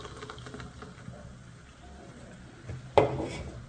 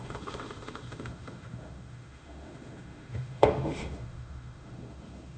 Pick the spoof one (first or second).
second